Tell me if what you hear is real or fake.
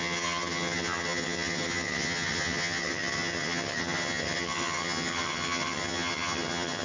fake